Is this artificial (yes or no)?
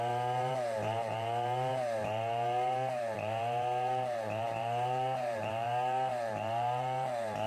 yes